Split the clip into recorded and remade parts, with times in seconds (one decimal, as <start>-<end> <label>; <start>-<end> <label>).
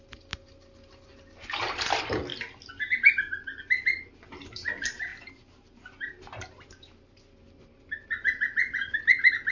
0.0-5.1 recorded; 5.1-7.2 remade; 7.2-9.5 recorded